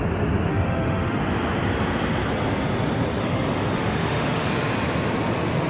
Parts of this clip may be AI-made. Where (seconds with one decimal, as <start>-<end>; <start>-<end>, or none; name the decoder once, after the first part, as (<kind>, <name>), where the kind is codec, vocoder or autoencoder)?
0.5-1.2 (autoencoder, DAC-VAE); 3.2-4.5

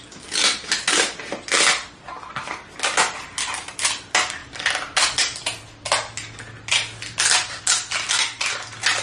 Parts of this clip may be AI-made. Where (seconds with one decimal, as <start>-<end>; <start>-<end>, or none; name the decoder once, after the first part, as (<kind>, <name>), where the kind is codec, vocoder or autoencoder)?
none

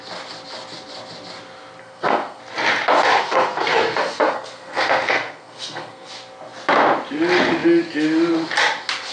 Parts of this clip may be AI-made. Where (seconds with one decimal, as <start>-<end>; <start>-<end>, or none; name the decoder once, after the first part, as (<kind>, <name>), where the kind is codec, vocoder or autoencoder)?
1.8-2.4 (codec, SNAC); 3.2-6.1

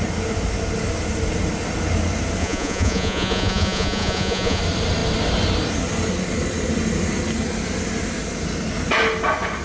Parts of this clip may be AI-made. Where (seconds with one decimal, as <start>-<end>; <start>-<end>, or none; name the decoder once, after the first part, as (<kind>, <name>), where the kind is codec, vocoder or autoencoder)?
2.4-4.6 (vocoder, Vocos)

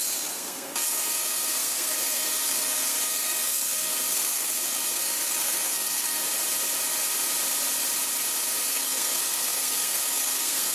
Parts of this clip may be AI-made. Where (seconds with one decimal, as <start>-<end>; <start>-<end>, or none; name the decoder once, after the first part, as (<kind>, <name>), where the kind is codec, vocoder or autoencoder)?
0.0-6.2 (codec, SNAC); 8.7-10.7

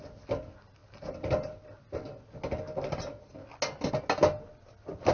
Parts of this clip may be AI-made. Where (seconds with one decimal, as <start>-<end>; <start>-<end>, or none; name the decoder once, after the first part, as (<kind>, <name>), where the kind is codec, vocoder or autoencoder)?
none